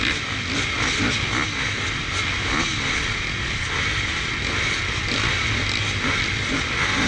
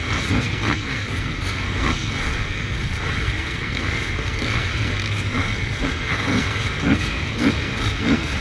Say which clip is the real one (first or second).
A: first